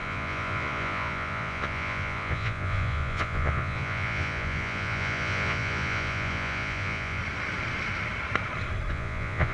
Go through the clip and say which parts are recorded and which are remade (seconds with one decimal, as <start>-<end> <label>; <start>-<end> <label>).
0.0-7.2 remade; 7.2-8.9 recorded; 8.9-9.5 remade